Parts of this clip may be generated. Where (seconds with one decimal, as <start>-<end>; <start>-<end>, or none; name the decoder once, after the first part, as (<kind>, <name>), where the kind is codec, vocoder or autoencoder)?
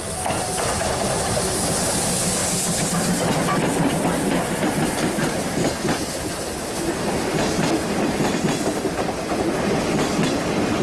none